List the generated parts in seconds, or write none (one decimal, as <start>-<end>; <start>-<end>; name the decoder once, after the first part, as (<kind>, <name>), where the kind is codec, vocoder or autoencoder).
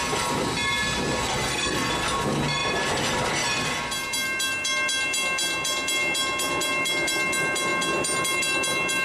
1.3-1.9 (codec, SNAC)